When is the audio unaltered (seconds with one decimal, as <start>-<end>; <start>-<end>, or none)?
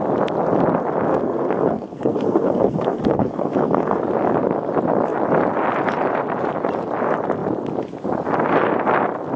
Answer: 0.0-1.1; 4.0-9.4